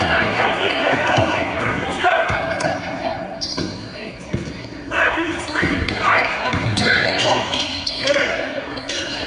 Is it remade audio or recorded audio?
remade